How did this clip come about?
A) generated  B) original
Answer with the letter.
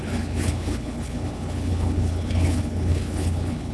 A